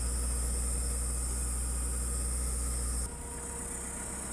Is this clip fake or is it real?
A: real